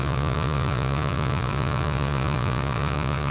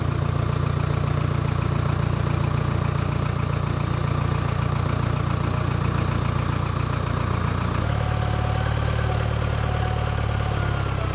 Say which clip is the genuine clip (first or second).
second